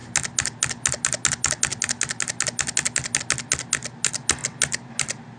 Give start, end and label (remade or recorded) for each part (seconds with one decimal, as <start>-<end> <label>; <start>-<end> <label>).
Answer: 0.0-5.4 recorded